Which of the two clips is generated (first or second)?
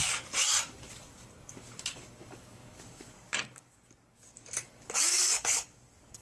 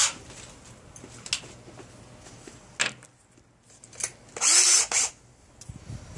first